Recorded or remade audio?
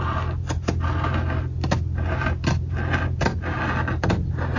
recorded